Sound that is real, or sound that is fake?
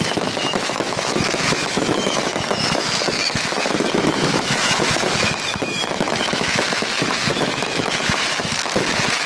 fake